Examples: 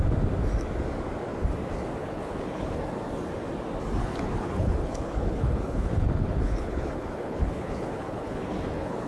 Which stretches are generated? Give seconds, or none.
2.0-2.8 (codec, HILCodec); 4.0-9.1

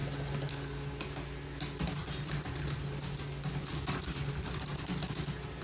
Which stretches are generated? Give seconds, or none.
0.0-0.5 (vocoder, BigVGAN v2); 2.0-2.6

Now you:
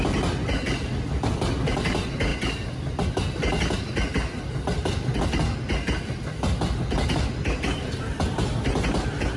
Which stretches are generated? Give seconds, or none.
none

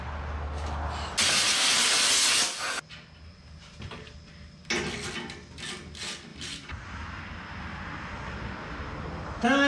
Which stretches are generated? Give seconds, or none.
6.3-7.2 (vocoder, BigVGAN v2)

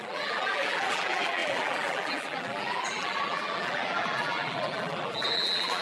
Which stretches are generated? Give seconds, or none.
0.0-5.8 (vocoder, BigVGAN v2)

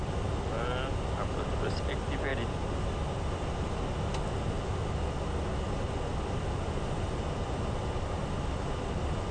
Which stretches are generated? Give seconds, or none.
none

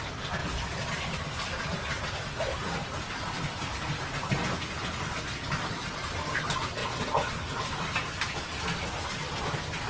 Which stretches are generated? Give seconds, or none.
none

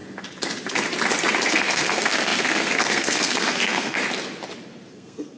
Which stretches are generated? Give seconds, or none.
1.5-4.0 (codec, SNAC); 4.9-5.4